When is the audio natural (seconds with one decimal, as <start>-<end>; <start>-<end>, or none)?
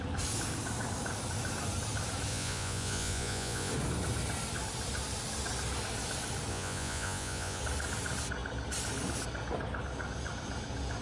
0.0-2.3; 3.7-6.5; 7.6-11.0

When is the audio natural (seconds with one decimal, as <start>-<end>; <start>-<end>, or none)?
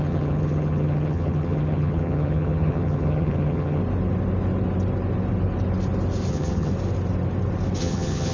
3.8-6.3; 6.7-7.8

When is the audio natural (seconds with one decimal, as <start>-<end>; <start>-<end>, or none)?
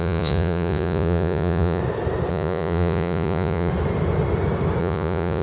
1.8-2.3; 3.7-4.8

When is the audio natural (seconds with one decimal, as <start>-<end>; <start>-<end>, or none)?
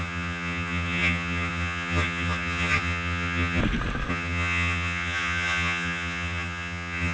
3.6-4.1